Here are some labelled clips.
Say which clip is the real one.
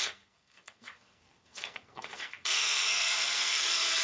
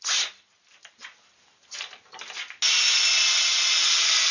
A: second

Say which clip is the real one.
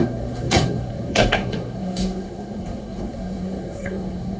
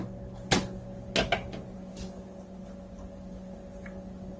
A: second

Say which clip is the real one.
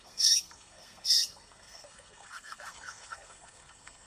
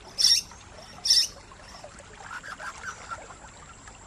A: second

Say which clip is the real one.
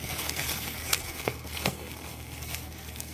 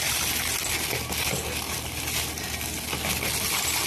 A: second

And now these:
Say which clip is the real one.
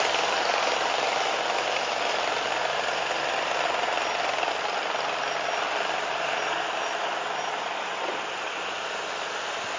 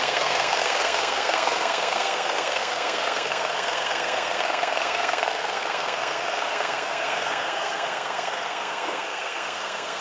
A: first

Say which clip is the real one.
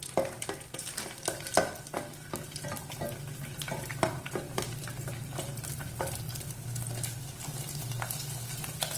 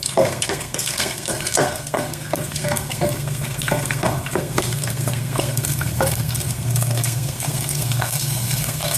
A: first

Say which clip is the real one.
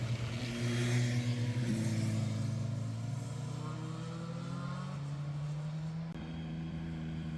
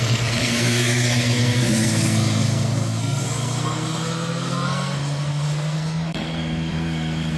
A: first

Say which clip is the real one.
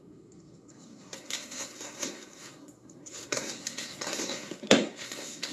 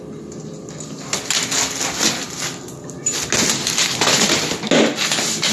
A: second